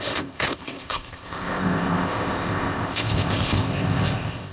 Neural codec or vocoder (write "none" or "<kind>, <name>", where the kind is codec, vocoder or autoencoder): codec, ZipCodec